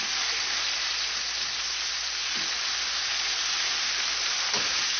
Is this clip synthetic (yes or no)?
no